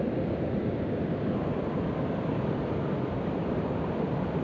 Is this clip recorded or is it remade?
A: recorded